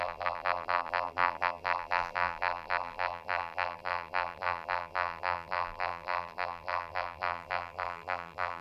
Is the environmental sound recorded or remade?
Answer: remade